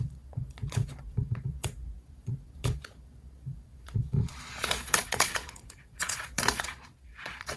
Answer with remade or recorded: remade